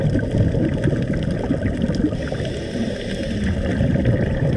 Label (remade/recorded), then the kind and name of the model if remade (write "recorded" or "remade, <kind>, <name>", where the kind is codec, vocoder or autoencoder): recorded